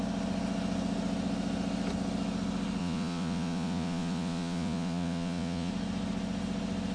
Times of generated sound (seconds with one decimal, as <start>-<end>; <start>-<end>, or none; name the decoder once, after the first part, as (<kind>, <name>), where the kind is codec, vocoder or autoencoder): 2.8-5.7 (vocoder, Vocos)